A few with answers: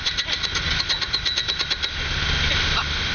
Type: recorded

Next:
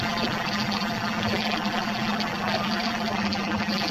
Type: remade